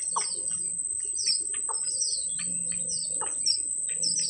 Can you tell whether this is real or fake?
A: real